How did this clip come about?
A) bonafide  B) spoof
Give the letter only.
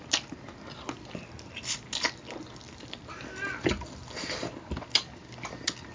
A